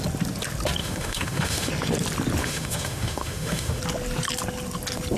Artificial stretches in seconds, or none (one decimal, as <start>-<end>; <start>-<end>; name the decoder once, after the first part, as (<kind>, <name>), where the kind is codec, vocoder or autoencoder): 0.8-1.7 (autoencoder, DAC-VAE); 2.4-3.8